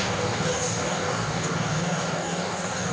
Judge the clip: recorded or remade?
remade